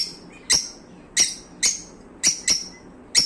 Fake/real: real